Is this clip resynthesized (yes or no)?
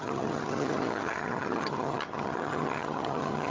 yes